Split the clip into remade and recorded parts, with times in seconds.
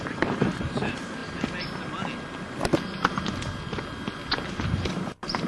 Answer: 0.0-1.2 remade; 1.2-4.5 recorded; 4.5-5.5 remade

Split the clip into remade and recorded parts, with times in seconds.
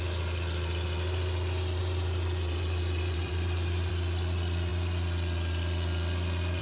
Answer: 0.0-1.8 recorded; 1.8-3.9 remade; 3.9-6.6 recorded